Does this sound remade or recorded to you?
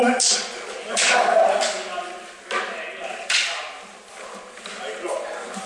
recorded